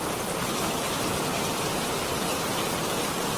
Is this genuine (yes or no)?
yes